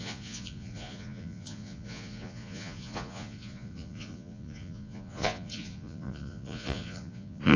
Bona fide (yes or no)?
no